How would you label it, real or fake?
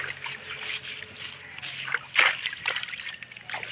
real